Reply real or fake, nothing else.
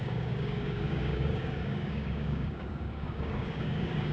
fake